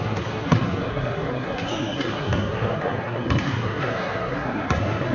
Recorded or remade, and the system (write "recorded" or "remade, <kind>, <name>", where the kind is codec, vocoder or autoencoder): remade, codec, SNAC